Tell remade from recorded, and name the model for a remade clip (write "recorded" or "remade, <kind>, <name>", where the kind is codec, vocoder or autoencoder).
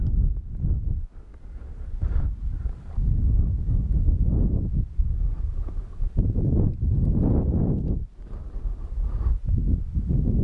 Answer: recorded